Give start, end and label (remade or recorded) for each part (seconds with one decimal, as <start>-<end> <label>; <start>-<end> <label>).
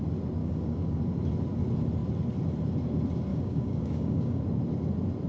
0.0-0.4 recorded; 0.4-1.0 remade; 1.0-3.3 recorded; 3.3-4.4 remade; 4.4-5.3 recorded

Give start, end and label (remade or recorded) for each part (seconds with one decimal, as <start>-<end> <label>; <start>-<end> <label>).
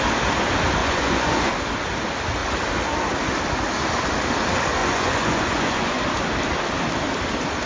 0.0-0.8 recorded; 0.8-1.5 remade; 1.5-4.8 recorded; 4.8-6.0 remade; 6.0-7.7 recorded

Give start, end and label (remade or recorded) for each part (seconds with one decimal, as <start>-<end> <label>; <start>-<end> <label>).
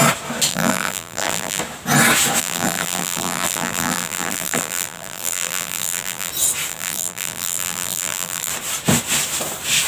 0.0-0.5 recorded; 0.5-1.6 remade; 1.6-2.4 recorded; 2.4-6.3 remade; 6.3-6.7 recorded; 6.7-8.5 remade; 8.5-9.9 recorded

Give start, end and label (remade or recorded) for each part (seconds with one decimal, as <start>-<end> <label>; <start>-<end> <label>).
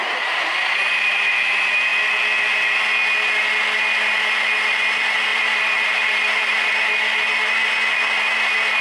0.0-5.3 recorded; 5.3-6.7 remade; 6.7-8.8 recorded